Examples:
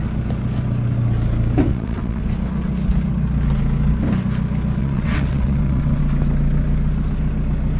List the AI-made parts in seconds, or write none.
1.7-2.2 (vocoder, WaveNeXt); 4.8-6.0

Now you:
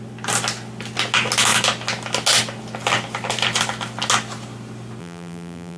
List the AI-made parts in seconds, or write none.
5.0-5.8 (vocoder, BigVGAN v2)

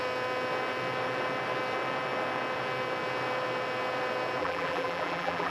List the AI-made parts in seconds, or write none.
4.4-5.5 (vocoder, BigVGAN v2)

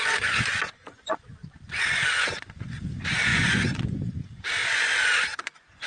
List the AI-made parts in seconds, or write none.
0.0-5.9 (vocoder, Vocos)

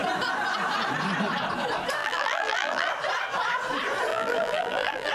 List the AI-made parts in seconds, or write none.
2.0-2.9 (vocoder, BigVGAN v2); 4.1-5.1

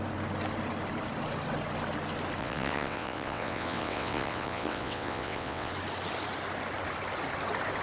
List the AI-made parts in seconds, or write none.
2.4-5.7 (vocoder, WaveNeXt)

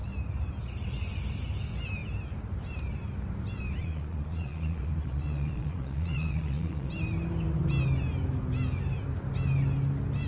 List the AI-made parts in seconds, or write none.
3.8-6.9 (vocoder, Vocos)

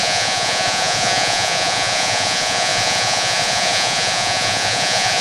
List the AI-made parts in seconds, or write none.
0.0-5.2 (vocoder, Vocos)